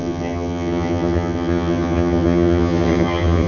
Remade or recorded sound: remade